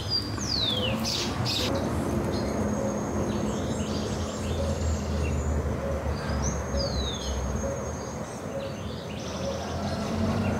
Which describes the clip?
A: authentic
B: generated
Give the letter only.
A